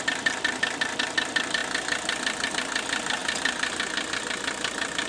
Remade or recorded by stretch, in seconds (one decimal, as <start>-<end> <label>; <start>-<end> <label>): 0.0-5.1 recorded